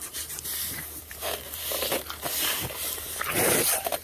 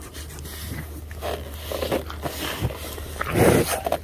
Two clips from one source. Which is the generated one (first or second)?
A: first